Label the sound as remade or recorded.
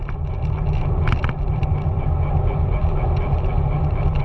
recorded